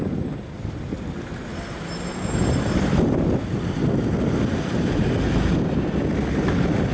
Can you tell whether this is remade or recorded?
recorded